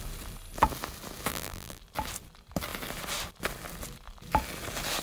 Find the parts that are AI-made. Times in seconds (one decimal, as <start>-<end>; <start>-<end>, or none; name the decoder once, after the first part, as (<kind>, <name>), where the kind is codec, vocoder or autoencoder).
1.3-1.8 (vocoder, BigVGAN v2)